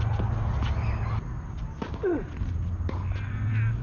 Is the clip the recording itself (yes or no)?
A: yes